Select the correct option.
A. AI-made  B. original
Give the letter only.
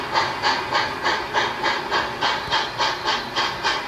B